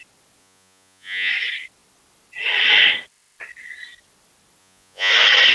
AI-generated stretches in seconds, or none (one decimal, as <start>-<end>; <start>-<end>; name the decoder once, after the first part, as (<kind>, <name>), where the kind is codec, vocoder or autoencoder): 0.4-1.3 (vocoder, Vocos); 4.6-5.1